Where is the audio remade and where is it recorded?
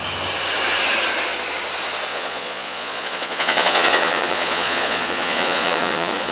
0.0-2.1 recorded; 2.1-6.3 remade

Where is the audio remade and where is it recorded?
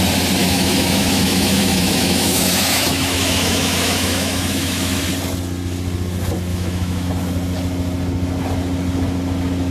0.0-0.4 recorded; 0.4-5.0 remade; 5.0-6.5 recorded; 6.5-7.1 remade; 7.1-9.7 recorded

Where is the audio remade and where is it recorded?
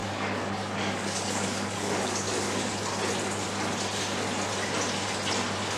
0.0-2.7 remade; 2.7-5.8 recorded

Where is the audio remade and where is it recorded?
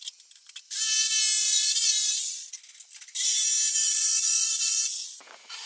0.0-1.4 recorded; 1.4-2.3 remade; 2.3-3.8 recorded; 3.8-5.7 remade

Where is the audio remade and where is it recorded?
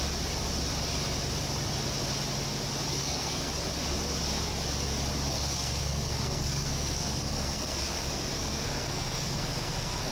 0.0-3.0 recorded; 3.0-3.5 remade; 3.5-5.3 recorded; 5.3-10.1 remade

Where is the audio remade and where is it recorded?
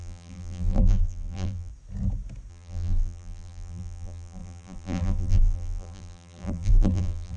0.0-1.7 remade; 1.7-2.5 recorded; 2.5-7.4 remade